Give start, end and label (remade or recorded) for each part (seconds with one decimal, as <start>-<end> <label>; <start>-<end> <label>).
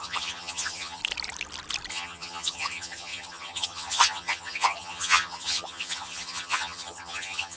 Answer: 0.0-1.0 remade; 1.0-1.9 recorded; 1.9-7.6 remade